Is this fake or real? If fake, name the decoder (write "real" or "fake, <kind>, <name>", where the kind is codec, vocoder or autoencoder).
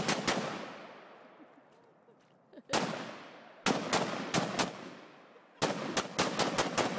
real